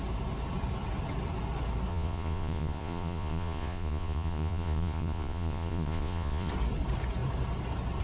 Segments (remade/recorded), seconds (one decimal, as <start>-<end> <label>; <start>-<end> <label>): 0.0-1.9 recorded; 1.9-6.5 remade; 6.5-8.0 recorded